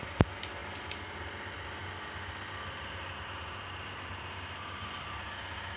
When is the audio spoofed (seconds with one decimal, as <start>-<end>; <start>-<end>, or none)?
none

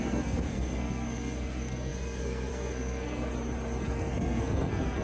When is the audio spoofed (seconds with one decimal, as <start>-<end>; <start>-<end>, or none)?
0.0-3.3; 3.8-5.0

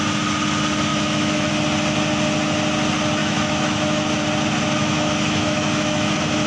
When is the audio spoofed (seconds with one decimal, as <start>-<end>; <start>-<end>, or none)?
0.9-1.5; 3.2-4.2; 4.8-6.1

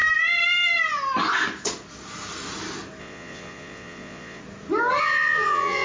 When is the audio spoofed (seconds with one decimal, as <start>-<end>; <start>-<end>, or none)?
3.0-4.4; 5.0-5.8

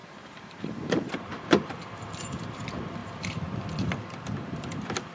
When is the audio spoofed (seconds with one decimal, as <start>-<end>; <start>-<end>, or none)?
0.0-2.6; 3.0-5.1

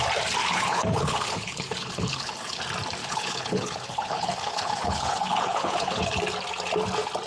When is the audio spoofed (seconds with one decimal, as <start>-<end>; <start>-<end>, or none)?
0.4-2.6; 3.0-6.2

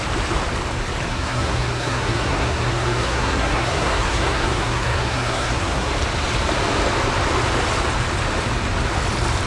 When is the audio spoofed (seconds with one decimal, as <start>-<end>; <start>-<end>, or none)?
1.1-5.9

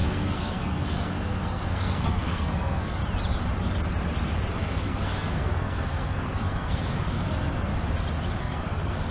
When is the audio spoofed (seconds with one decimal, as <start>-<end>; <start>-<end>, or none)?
0.0-3.0; 4.5-7.7; 8.4-9.1